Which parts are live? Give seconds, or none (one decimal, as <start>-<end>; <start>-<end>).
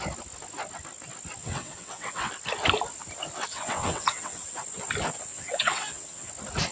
0.0-1.4; 2.3-3.5; 4.4-5.3; 6.3-6.7